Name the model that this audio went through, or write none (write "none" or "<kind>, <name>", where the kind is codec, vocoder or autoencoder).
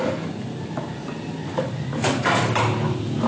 none